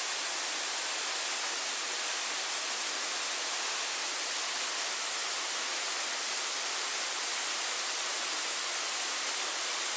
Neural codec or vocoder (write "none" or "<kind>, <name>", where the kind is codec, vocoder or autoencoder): none